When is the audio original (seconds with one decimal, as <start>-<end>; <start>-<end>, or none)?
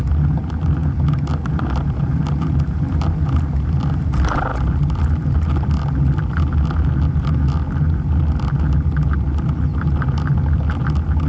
0.0-11.3